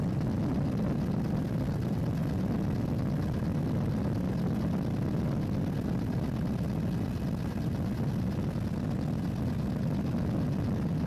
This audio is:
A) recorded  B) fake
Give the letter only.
A